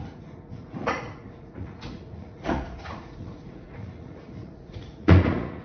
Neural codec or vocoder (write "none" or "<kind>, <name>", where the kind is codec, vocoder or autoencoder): vocoder, Vocos